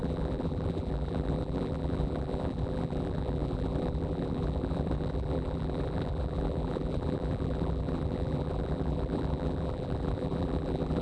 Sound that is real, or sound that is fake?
fake